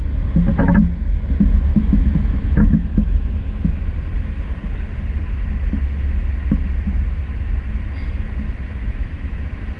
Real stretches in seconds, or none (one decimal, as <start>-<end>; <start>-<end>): 0.0-1.7; 3.7-8.8; 9.4-9.8